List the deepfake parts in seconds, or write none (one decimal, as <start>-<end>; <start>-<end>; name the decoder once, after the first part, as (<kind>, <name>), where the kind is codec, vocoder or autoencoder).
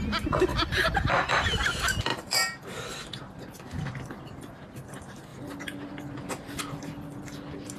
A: 2.1-3.3 (vocoder, BigVGAN v2); 5.3-6.6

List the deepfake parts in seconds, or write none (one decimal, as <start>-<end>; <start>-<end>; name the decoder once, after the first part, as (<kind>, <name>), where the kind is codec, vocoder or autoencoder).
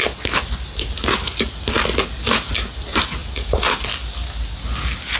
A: none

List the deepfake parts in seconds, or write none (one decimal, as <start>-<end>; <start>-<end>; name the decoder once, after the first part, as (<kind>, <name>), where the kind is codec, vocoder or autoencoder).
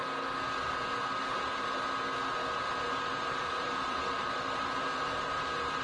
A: 3.1-5.3 (vocoder, BigVGAN v2)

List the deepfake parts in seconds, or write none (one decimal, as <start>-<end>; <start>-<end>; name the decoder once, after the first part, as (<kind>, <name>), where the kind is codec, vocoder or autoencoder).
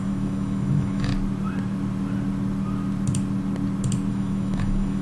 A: 0.0-1.1 (autoencoder, DAC-VAE); 4.1-5.0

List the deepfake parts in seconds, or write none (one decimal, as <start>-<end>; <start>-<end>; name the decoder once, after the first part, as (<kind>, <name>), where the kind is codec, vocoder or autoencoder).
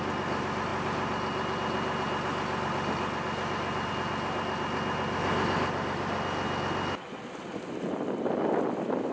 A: none